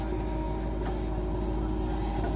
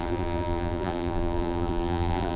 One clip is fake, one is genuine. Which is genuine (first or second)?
first